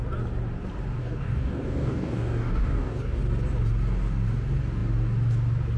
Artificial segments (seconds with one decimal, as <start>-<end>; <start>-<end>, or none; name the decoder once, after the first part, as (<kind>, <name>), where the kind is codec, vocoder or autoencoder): 1.0-3.2 (codec, DAC)